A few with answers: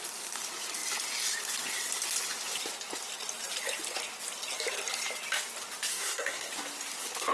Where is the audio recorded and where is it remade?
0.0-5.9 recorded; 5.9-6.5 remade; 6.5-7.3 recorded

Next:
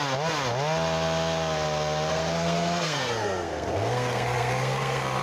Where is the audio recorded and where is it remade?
0.0-2.1 recorded; 2.1-5.2 remade

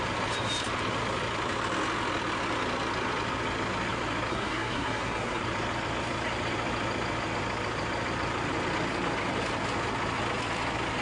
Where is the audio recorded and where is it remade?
0.0-4.3 recorded; 4.3-5.4 remade; 5.4-11.0 recorded

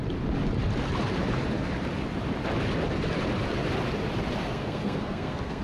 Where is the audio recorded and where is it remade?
0.0-4.4 recorded; 4.4-5.6 remade

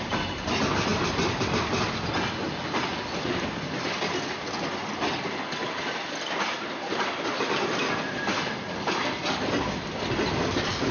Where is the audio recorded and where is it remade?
0.0-10.9 recorded

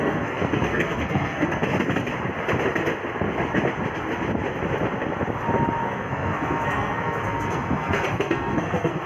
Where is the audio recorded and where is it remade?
0.0-1.6 remade; 1.6-5.8 recorded; 5.8-9.1 remade

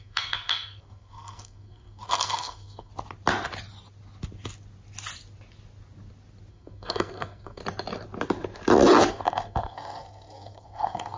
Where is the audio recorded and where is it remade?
0.0-2.9 remade; 2.9-6.5 recorded; 6.5-7.6 remade; 7.6-9.1 recorded; 9.1-11.2 remade

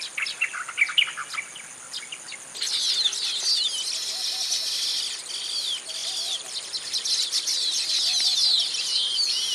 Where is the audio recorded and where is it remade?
0.0-9.5 recorded